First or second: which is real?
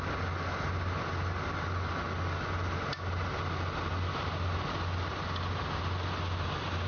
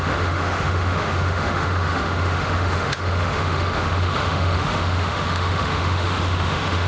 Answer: first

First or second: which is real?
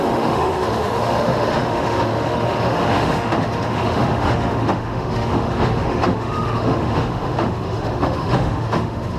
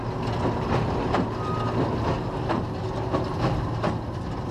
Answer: second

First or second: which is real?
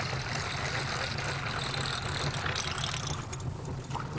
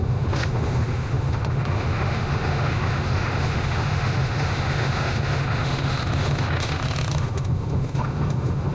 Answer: first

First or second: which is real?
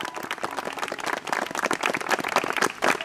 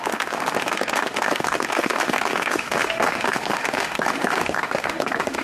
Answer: first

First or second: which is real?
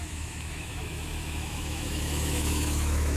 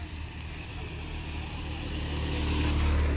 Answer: second